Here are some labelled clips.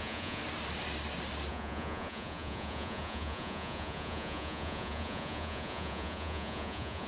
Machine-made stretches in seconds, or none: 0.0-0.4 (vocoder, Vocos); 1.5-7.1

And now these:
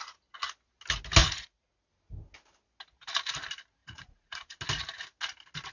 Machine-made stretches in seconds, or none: 1.2-1.9 (vocoder, Vocos); 3.8-4.6

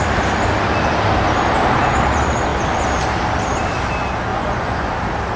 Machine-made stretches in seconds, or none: 4.3-4.9 (vocoder, Vocos)

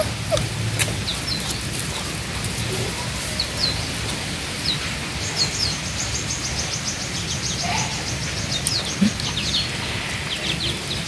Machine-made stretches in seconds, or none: none

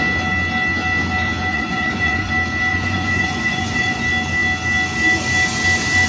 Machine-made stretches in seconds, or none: 1.5-2.3 (vocoder, Vocos); 2.7-4.0